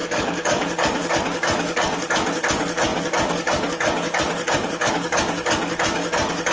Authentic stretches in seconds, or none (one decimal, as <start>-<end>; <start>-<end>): none